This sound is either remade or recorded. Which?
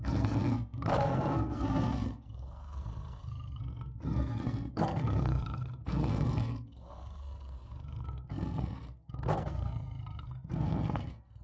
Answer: remade